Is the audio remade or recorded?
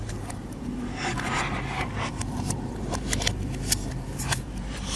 remade